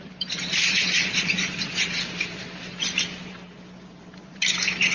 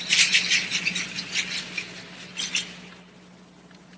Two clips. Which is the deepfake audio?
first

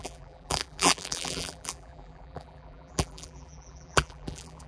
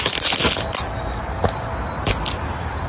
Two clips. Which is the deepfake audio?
first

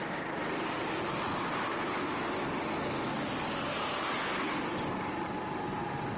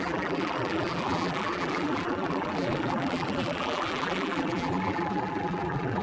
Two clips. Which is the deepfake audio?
second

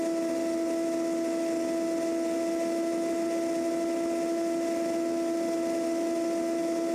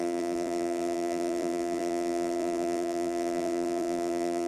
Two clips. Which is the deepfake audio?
second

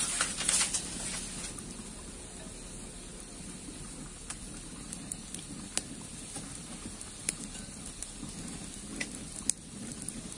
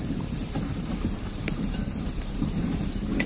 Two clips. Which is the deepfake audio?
second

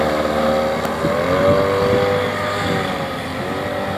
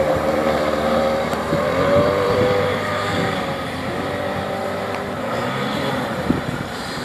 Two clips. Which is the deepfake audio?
second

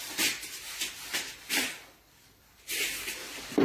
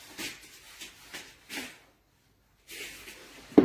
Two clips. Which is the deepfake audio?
first